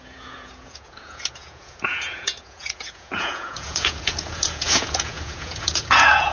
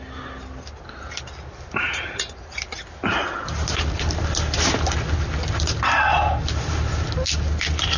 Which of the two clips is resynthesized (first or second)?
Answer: first